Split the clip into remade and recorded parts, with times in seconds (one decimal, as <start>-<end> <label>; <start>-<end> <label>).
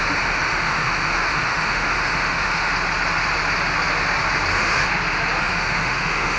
0.0-2.7 remade; 2.7-4.5 recorded; 4.5-4.9 remade; 4.9-5.4 recorded; 5.4-6.4 remade